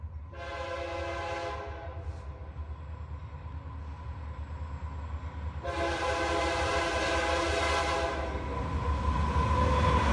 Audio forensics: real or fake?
real